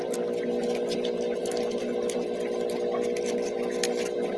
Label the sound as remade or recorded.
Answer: recorded